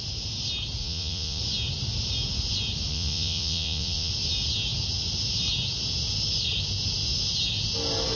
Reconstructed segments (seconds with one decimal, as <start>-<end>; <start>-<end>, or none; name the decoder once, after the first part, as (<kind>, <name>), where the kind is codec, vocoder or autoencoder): 0.8-1.4 (vocoder, Vocos); 2.9-4.1